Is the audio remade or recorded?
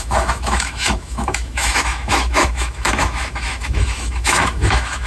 remade